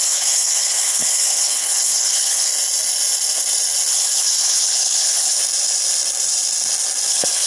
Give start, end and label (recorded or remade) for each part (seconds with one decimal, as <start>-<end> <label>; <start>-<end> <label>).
0.0-2.5 remade; 2.5-3.9 recorded; 3.9-5.4 remade; 5.4-7.1 recorded; 7.1-7.5 remade